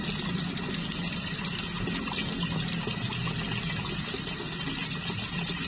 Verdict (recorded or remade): recorded